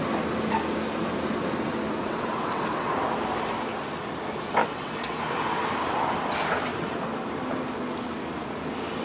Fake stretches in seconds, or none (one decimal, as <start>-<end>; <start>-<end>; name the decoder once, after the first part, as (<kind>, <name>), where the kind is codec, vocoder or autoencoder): 2.0-2.9 (vocoder, WaveNeXt); 4.6-5.2

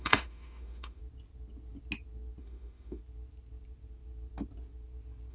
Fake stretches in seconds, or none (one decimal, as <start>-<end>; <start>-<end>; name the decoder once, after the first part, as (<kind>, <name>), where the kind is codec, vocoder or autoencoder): 0.0-1.0 (autoencoder, DAC-VAE); 2.4-3.0

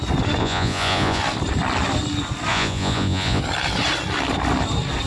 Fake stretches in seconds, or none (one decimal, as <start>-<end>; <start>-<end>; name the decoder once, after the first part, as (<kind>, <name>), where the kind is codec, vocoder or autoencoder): 0.4-1.2 (vocoder, Vocos); 2.5-3.4

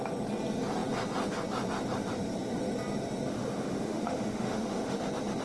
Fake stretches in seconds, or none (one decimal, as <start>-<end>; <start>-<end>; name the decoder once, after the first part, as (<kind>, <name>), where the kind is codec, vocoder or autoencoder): 3.3-5.0 (autoencoder, DAC-VAE)

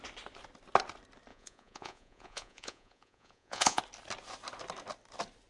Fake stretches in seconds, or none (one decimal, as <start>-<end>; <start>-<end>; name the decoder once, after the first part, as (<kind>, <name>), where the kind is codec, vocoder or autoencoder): 1.3-3.8 (vocoder, Vocos)